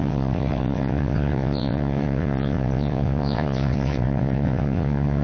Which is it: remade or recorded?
remade